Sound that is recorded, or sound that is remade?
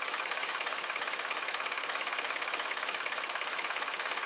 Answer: remade